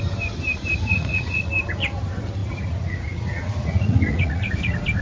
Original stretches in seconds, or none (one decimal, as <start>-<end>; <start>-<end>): 0.0-0.9; 1.5-2.4; 4.5-5.0